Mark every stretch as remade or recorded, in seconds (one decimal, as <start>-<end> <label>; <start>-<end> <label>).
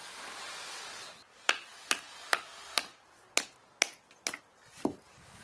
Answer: 0.0-5.4 recorded